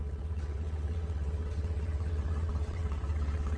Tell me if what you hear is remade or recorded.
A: remade